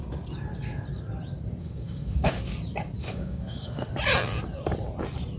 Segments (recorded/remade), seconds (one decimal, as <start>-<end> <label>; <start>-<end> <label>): 0.0-1.6 recorded; 1.6-2.4 remade; 2.4-3.0 recorded; 3.0-3.9 remade; 3.9-5.4 recorded